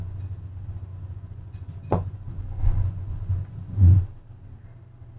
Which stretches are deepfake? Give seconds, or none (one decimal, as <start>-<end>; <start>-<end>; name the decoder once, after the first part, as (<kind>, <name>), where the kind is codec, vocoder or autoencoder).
0.9-4.0 (vocoder, Vocos)